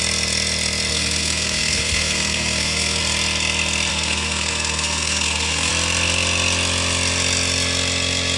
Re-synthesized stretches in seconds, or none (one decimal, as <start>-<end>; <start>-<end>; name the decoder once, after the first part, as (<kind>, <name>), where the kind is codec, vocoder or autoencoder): 0.9-3.0 (codec, SNAC); 3.9-5.7